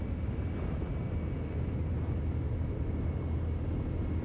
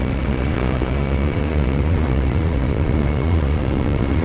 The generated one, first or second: second